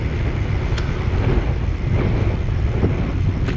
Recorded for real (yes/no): yes